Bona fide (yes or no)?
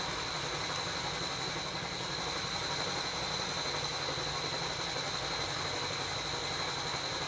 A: yes